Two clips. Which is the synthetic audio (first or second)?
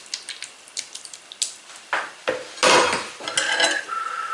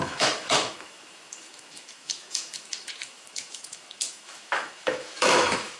second